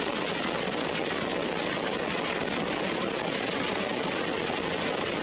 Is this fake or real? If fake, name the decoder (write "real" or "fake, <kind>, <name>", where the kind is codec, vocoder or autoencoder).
real